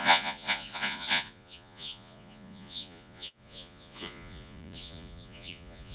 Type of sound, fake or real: fake